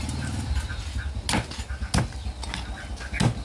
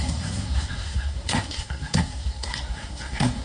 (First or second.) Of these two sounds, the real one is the first